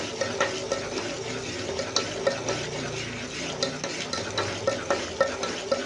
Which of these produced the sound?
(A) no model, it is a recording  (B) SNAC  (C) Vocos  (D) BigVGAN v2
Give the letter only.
A